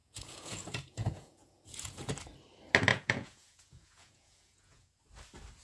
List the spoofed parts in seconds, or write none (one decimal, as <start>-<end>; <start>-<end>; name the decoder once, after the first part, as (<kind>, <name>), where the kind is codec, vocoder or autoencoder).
0.0-2.1 (vocoder, Vocos); 2.9-5.0